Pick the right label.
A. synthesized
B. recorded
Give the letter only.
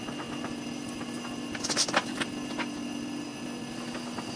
B